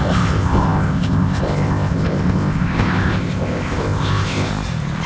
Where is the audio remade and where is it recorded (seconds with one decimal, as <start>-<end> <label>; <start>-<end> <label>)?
0.0-4.5 remade; 4.5-5.1 recorded